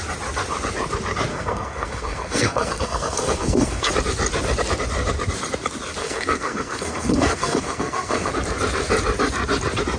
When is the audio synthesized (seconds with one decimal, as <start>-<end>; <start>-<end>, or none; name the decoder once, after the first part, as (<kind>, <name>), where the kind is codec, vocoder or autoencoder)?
1.3-3.9 (codec, SNAC); 6.0-8.3